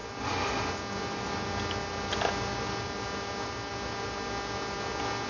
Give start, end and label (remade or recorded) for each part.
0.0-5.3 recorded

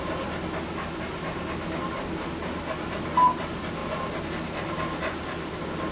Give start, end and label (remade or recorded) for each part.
0.0-5.9 recorded

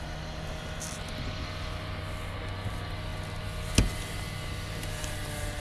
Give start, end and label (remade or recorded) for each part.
0.0-5.6 recorded

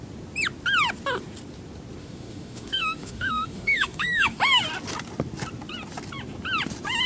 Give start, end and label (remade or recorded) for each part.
0.0-2.0 recorded; 2.0-4.6 remade; 4.6-7.1 recorded

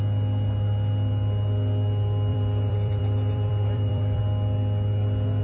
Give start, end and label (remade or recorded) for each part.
0.0-2.3 recorded; 2.3-4.2 remade; 4.2-5.4 recorded

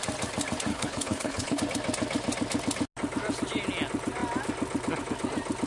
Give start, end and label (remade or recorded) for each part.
0.0-0.7 recorded; 0.7-1.6 remade; 1.6-5.7 recorded

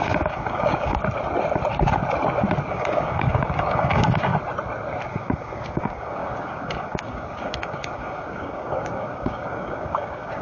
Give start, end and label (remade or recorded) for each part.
0.0-1.0 remade; 1.0-2.7 recorded; 2.7-4.3 remade; 4.3-5.1 recorded; 5.1-10.4 remade